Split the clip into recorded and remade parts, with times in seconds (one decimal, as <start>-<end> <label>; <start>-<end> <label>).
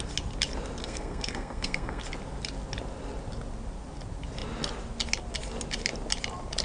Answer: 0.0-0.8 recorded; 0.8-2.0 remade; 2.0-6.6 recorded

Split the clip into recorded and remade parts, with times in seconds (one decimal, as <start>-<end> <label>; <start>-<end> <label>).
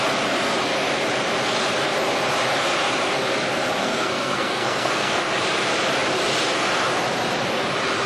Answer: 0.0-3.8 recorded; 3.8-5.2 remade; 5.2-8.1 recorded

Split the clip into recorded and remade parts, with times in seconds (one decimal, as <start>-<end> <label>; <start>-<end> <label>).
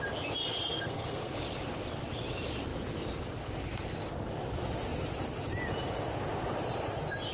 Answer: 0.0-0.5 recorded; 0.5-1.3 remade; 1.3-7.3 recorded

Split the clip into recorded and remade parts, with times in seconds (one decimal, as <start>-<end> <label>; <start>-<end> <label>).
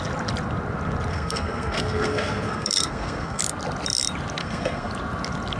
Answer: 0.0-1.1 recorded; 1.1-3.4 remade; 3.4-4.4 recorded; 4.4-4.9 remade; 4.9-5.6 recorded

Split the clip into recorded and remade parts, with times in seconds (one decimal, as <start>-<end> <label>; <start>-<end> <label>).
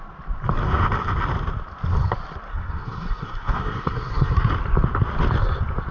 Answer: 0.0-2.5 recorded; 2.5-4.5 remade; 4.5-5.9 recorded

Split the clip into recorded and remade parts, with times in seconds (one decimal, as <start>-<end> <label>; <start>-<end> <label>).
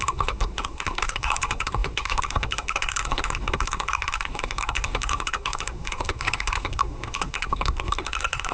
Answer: 0.0-8.5 remade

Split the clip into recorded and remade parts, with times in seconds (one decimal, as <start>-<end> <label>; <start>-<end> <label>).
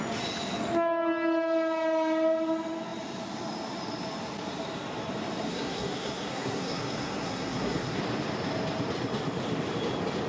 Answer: 0.0-5.5 recorded; 5.5-8.0 remade; 8.0-10.3 recorded